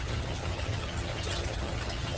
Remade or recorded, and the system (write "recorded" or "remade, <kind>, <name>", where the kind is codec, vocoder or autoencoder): remade, vocoder, HiFi-GAN